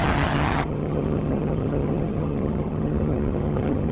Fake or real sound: fake